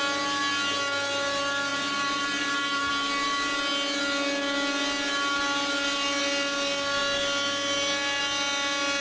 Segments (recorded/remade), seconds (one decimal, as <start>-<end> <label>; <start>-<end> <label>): 0.0-1.7 recorded; 1.7-2.9 remade; 2.9-9.0 recorded